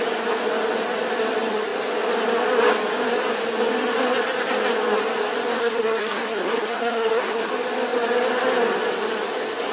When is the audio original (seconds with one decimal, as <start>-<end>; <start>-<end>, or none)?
0.0-5.6; 7.5-9.7